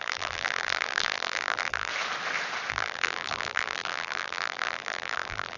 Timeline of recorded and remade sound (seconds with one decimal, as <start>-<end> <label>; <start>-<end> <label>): 0.0-1.9 remade; 1.9-2.7 recorded; 2.7-5.6 remade